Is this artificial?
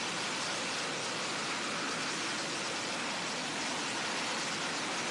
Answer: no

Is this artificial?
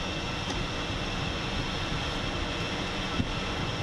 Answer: yes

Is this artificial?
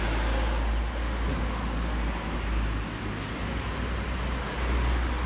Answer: no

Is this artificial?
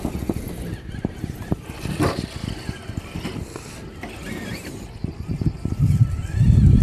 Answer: no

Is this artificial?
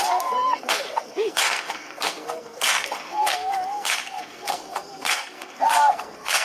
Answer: yes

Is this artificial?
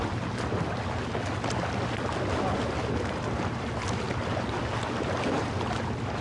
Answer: no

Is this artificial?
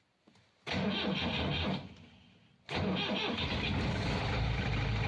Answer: no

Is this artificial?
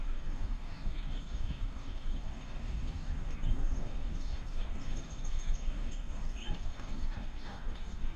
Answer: yes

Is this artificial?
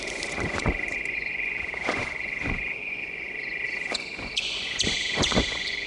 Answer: yes